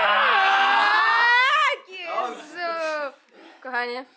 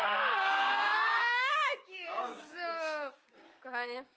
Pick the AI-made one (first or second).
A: second